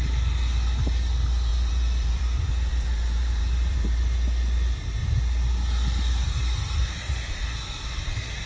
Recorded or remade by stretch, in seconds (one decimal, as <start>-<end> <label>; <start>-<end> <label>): 0.0-1.5 recorded; 1.5-2.2 remade; 2.2-2.7 recorded; 2.7-4.0 remade; 4.0-8.5 recorded